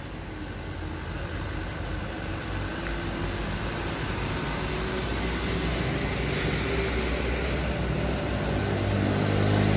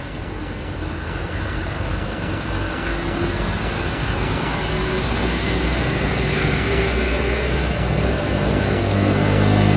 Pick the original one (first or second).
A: first